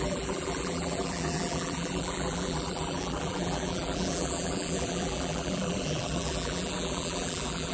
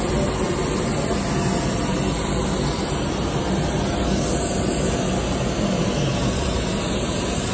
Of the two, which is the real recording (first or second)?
second